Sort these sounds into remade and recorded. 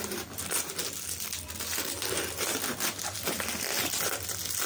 recorded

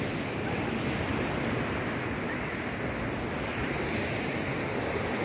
recorded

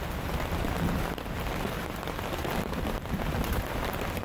recorded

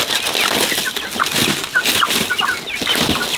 recorded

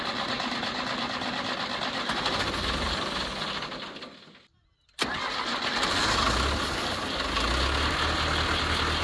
recorded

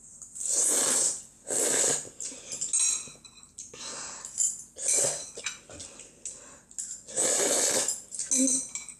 recorded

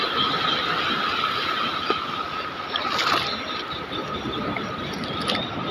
remade